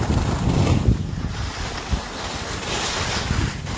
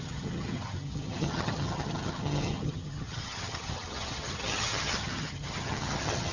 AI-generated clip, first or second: second